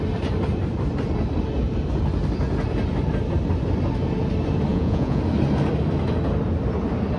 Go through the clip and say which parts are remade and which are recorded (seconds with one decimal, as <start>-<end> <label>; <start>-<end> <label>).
0.0-4.7 recorded; 4.7-5.2 remade; 5.2-7.2 recorded